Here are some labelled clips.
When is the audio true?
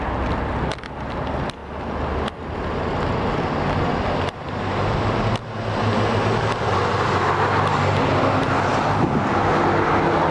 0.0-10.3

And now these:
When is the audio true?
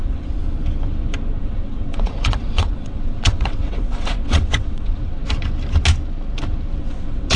0.4-1.4; 5.2-6.8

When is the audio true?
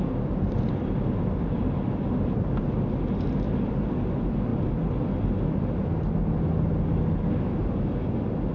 0.0-8.5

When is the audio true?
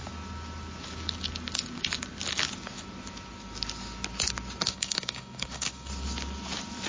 0.0-4.7; 5.9-6.9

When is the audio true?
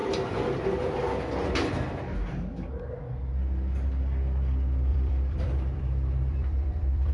0.5-4.9